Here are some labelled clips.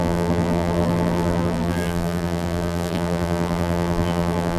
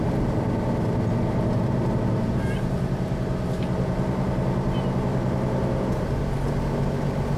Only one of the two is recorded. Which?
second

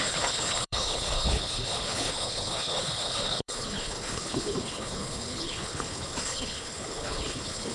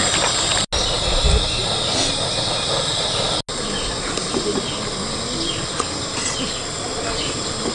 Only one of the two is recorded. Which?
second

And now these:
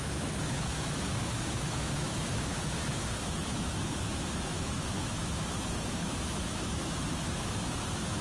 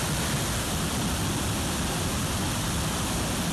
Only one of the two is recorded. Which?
second